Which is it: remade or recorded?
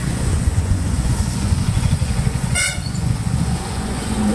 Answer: remade